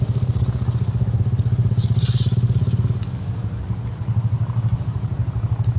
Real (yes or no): yes